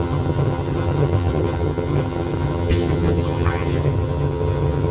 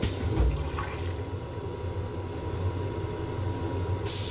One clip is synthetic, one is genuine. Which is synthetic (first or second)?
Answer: first